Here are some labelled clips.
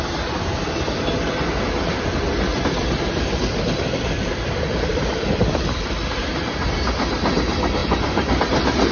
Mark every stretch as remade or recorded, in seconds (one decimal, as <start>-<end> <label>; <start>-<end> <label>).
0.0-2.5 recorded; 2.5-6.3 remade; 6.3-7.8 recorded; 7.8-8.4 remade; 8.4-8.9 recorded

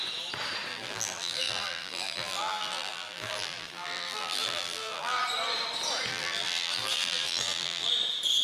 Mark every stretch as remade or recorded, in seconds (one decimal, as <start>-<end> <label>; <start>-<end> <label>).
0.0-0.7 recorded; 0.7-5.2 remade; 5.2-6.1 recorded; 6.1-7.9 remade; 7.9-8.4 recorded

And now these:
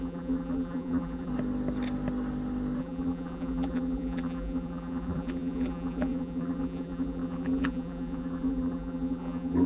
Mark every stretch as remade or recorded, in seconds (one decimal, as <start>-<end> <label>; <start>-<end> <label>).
0.0-1.3 remade; 1.3-2.8 recorded; 2.8-9.7 remade

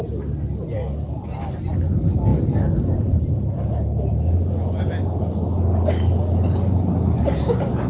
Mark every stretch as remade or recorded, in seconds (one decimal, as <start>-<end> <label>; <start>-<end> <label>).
0.0-7.9 recorded

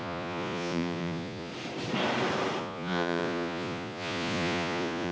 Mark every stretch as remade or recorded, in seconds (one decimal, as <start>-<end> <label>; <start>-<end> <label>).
0.0-1.5 remade; 1.5-2.6 recorded; 2.6-5.1 remade

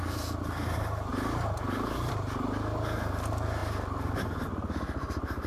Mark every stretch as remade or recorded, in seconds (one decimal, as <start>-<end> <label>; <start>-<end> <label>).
0.0-5.5 recorded

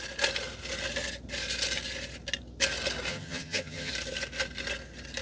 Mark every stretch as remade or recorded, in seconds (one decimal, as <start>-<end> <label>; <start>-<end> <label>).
0.0-3.1 recorded; 3.1-3.9 remade; 3.9-5.2 recorded

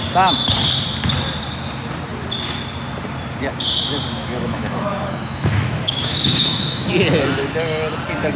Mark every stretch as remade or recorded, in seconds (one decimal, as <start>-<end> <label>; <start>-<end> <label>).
0.0-4.2 recorded; 4.2-6.9 remade; 6.9-8.4 recorded